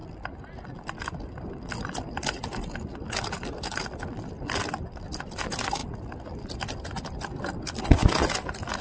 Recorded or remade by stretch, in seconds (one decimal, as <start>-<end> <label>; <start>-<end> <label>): 0.0-8.8 recorded